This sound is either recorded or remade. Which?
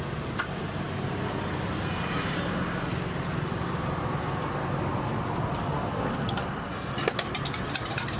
recorded